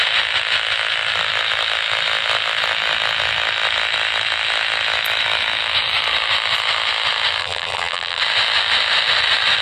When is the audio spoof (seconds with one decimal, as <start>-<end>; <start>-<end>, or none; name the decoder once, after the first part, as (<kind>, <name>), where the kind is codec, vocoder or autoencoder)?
7.4-8.2 (vocoder, BigVGAN v2)